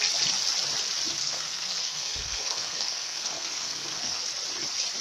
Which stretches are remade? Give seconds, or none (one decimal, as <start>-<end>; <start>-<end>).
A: 1.2-4.2